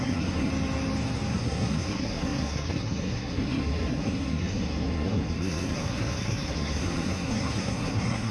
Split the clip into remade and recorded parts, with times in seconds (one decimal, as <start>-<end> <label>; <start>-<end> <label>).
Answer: 0.0-0.5 remade; 0.5-1.3 recorded; 1.3-8.3 remade